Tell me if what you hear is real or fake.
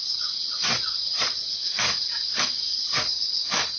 fake